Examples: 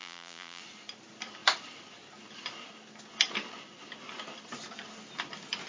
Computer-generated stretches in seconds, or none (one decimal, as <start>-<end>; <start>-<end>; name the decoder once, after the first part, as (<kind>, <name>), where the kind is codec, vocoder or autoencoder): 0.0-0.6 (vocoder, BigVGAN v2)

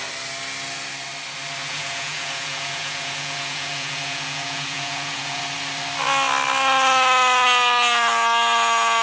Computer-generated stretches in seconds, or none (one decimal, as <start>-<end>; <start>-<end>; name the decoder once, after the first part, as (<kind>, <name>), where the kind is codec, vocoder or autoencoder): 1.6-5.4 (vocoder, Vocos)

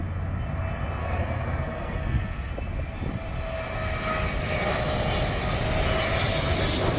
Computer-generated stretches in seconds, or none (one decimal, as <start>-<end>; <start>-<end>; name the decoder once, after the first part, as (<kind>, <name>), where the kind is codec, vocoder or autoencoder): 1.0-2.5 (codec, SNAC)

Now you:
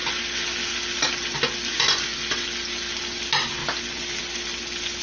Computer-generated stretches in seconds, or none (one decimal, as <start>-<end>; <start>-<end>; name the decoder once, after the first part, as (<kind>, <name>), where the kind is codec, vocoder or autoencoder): none

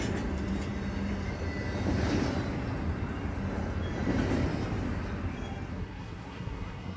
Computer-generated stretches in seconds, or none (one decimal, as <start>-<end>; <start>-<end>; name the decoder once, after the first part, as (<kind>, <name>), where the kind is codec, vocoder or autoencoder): 5.7-7.0 (codec, SNAC)

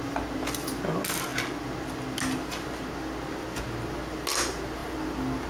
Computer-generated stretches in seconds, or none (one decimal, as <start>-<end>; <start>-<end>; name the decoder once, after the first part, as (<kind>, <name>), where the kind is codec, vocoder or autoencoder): none

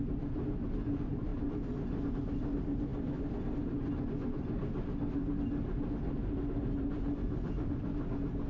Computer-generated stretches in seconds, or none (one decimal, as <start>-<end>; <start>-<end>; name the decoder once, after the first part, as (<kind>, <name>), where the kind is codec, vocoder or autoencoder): none